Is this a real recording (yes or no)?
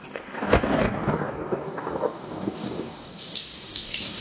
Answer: no